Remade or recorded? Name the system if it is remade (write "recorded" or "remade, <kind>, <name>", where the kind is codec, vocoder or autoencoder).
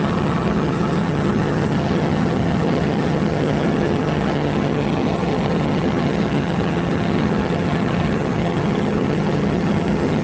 remade, vocoder, HiFi-GAN